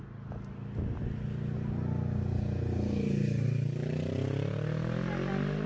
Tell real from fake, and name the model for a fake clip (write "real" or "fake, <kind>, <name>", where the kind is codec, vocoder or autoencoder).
real